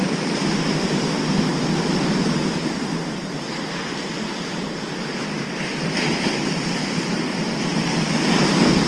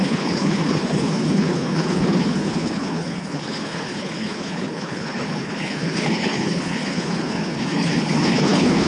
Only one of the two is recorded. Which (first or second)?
first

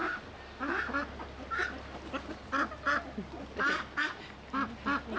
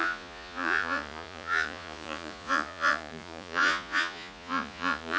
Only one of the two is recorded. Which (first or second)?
first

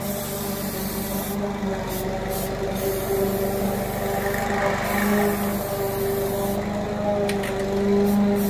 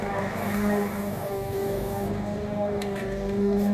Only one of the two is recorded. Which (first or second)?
first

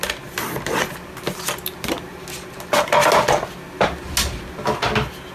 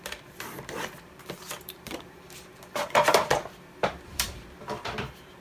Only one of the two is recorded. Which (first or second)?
first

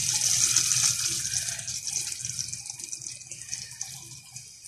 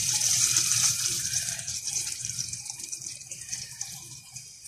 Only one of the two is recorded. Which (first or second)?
first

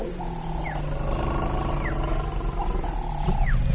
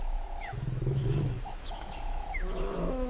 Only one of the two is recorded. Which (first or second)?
first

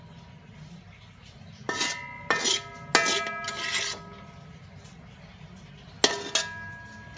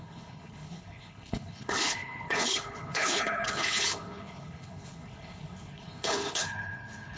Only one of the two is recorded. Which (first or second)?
first